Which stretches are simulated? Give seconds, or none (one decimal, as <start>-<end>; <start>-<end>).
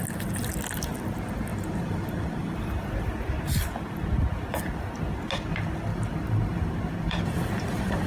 1.5-2.3; 5.9-8.1